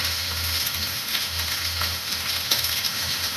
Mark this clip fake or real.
fake